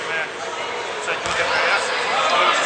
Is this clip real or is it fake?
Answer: real